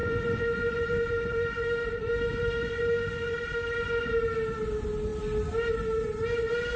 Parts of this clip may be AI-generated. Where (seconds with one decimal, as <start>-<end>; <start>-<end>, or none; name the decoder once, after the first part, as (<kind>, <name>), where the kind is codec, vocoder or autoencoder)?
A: 0.0-4.1 (vocoder, Vocos)